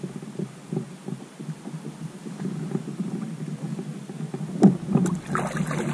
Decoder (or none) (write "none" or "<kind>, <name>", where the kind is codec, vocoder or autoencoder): none